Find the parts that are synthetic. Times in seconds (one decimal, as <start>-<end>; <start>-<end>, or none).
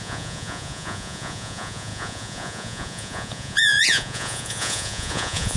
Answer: 0.0-5.6